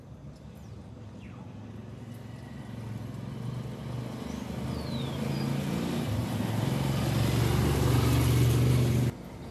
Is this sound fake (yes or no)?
no